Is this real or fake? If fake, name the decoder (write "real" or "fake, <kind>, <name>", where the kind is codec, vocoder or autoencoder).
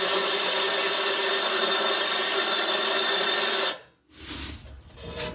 real